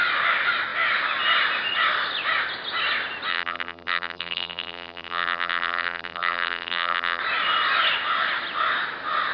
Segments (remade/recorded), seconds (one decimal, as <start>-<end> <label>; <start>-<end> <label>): 0.0-3.3 recorded; 3.3-7.2 remade; 7.2-9.3 recorded